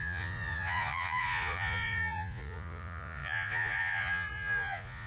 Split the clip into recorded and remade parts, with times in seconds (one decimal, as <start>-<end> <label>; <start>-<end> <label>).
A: 0.0-5.1 remade